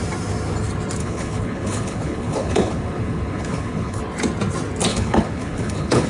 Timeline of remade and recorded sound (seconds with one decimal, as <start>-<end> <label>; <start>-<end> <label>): 0.0-1.0 recorded; 1.0-4.0 remade; 4.0-4.9 recorded; 4.9-6.1 remade